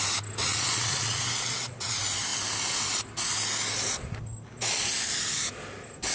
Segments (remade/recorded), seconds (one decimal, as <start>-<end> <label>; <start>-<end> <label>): 0.0-0.4 recorded; 0.4-1.2 remade; 1.2-6.1 recorded